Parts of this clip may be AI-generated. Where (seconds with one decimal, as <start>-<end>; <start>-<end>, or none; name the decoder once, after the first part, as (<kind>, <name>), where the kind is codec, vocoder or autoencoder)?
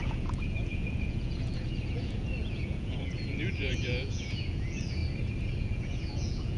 0.0-5.0 (vocoder, Vocos); 5.6-6.6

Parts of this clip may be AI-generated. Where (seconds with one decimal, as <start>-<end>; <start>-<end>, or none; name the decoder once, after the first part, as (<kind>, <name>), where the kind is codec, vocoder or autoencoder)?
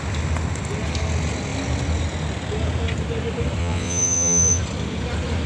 3.6-4.6 (vocoder, WaveNeXt)